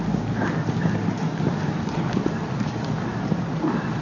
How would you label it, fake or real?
real